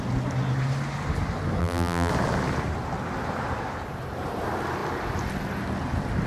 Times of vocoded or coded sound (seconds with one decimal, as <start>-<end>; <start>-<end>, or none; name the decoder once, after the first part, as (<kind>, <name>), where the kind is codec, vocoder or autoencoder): 1.6-2.1 (vocoder, BigVGAN v2)

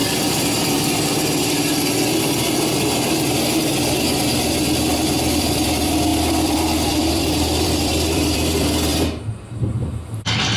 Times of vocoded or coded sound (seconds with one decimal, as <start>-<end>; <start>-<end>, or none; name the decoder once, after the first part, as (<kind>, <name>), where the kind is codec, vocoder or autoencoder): 4.8-8.9 (vocoder, BigVGAN v2); 9.8-10.6

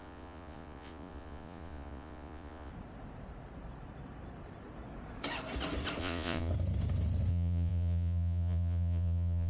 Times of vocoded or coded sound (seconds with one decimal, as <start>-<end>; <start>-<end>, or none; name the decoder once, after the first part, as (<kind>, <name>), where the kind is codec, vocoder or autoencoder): 0.0-2.7 (vocoder, Vocos); 6.0-6.5; 7.3-9.5

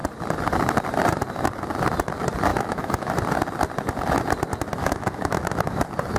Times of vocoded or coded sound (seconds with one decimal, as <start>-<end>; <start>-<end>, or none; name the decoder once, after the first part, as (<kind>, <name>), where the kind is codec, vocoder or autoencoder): 2.5-3.2 (autoencoder, DAC-VAE); 4.8-5.8

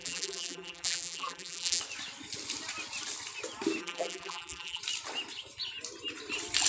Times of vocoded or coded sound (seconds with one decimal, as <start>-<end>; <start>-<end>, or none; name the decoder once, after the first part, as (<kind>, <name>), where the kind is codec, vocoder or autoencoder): 0.0-1.8 (vocoder, BigVGAN v2); 3.8-4.8

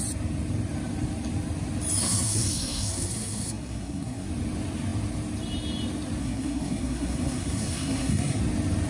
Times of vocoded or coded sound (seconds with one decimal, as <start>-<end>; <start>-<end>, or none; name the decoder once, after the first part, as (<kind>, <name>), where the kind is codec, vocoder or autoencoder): 2.0-4.3 (codec, SNAC); 6.2-8.4

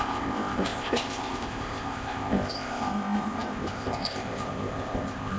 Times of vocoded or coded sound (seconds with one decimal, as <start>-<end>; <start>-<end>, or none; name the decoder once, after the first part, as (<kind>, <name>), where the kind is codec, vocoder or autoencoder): 0.0-5.4 (codec, ZipCodec)